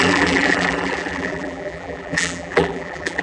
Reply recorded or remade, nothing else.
remade